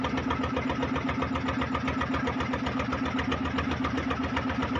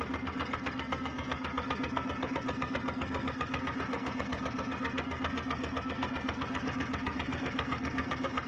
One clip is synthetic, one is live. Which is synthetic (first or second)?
second